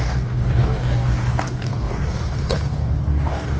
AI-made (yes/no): yes